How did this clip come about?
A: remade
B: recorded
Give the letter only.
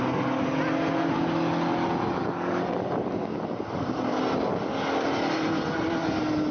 B